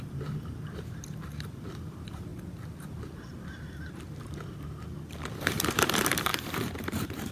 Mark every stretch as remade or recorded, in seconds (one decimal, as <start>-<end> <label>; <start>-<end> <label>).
0.0-2.3 remade; 2.3-5.3 recorded; 5.3-7.3 remade